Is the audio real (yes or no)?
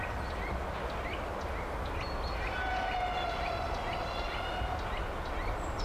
yes